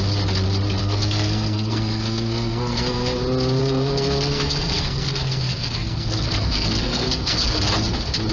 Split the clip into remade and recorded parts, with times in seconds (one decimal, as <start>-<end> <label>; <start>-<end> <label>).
0.0-0.8 recorded; 0.8-3.2 remade; 3.2-3.6 recorded; 3.6-7.7 remade; 7.7-8.3 recorded